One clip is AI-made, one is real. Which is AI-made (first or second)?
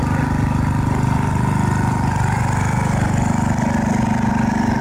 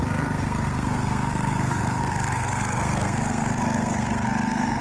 second